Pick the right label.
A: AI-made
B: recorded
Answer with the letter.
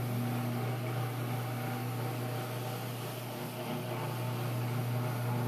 B